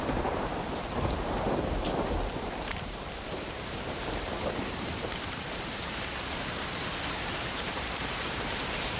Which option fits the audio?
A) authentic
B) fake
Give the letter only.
B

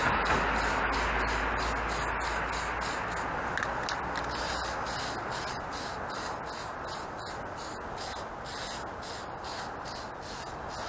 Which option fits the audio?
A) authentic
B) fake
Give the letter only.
A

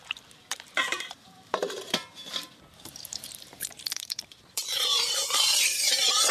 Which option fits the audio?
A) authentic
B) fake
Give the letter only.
B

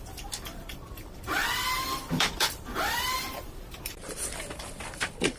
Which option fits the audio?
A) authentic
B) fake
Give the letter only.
B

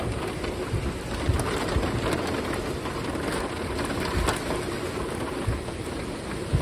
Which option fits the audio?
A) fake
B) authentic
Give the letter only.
B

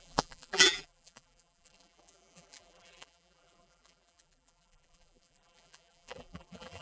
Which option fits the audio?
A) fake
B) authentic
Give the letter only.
A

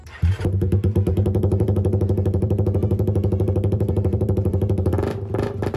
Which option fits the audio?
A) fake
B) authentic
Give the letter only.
A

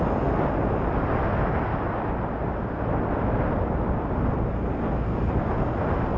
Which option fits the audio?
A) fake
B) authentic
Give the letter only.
B